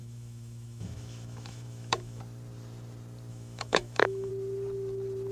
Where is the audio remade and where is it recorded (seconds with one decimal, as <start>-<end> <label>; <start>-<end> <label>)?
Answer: 0.0-2.2 remade; 2.2-3.3 recorded; 3.3-4.3 remade; 4.3-5.3 recorded